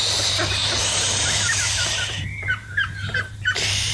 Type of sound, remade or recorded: remade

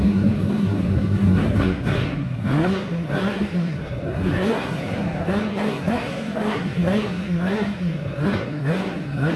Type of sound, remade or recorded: remade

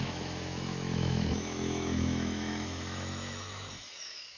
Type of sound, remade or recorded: remade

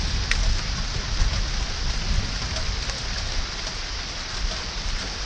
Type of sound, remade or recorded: recorded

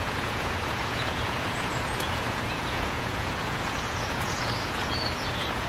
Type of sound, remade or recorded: remade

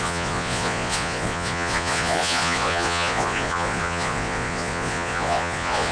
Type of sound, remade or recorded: remade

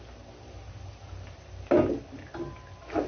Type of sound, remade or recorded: recorded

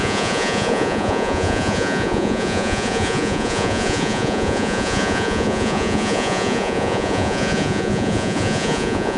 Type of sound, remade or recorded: remade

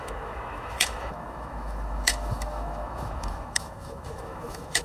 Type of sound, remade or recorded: remade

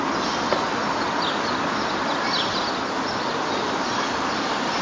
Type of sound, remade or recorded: recorded